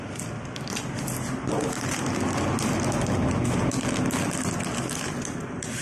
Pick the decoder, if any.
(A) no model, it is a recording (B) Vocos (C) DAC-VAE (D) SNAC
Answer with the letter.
A